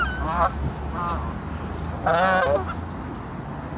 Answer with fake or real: real